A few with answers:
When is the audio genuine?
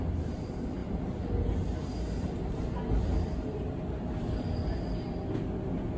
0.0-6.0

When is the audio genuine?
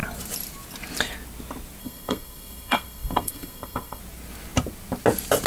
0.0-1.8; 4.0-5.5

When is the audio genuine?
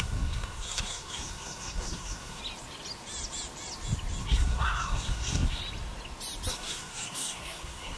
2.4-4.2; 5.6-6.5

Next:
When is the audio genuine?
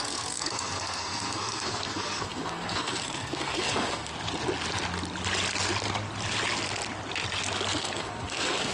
4.1-7.8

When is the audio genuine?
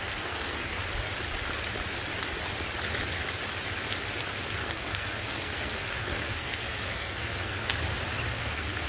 0.8-4.2; 7.7-8.3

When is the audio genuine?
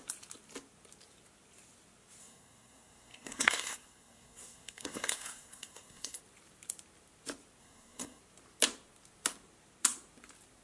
0.0-2.2; 6.2-7.6; 8.2-10.6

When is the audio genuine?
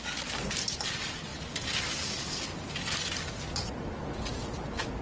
0.0-5.0